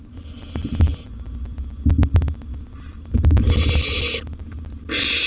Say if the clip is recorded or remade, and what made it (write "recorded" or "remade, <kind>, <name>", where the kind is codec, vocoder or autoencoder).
recorded